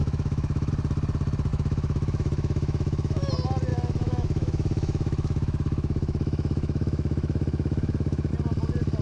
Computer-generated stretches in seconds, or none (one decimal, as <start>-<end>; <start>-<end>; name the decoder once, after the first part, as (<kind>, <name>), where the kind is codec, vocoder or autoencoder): 0.0-0.7 (autoencoder, DAC-VAE); 1.5-3.3; 3.7-8.3